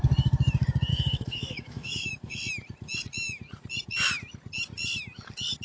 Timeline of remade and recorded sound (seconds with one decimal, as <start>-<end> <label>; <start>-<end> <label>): 0.0-0.9 recorded; 0.9-2.1 remade; 2.1-5.6 recorded